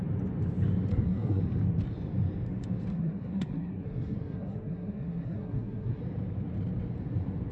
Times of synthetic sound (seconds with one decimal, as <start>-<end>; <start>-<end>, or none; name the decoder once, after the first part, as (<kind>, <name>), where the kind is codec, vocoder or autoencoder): 0.9-1.4 (codec, SNAC); 2.9-6.0